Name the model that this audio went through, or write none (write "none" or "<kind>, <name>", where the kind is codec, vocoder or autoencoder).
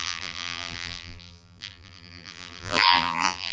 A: vocoder, BigVGAN v2